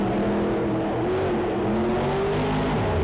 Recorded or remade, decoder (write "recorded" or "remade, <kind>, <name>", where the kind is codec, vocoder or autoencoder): recorded